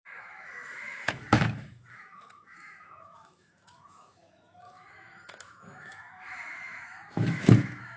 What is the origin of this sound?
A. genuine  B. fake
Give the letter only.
B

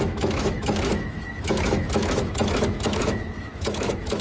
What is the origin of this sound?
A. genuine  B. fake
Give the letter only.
B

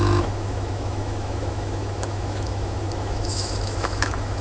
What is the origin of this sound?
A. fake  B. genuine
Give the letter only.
A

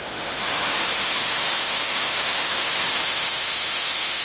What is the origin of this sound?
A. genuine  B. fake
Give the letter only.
B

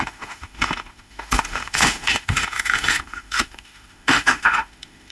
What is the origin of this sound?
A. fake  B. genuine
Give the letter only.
A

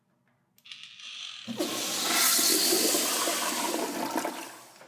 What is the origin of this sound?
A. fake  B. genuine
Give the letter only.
B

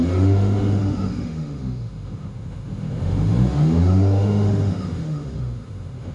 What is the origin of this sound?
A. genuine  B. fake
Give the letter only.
B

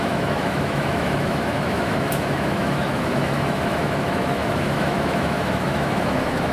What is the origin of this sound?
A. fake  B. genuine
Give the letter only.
A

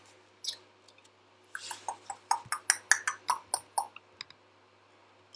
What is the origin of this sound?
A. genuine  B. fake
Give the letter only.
A